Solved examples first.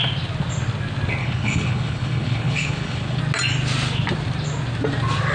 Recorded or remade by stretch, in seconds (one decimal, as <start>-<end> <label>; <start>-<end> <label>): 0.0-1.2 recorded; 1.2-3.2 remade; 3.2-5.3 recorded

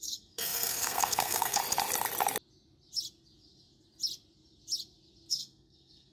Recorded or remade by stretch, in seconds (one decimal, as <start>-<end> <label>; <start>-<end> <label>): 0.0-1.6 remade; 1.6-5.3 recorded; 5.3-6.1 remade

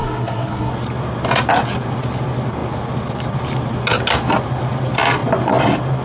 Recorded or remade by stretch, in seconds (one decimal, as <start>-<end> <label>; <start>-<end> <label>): 0.0-0.7 remade; 0.7-6.0 recorded

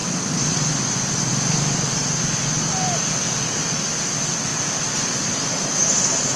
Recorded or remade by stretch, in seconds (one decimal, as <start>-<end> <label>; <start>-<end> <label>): 0.0-0.8 remade; 0.8-1.3 recorded; 1.3-2.1 remade; 2.1-4.5 recorded; 4.5-5.3 remade; 5.3-6.4 recorded